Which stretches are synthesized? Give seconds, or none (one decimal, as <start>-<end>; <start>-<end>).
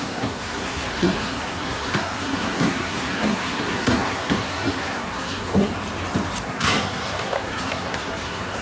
0.0-5.7; 6.4-8.6